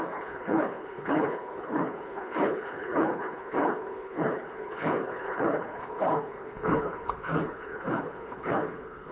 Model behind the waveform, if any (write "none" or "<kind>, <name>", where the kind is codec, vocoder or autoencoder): codec, HILCodec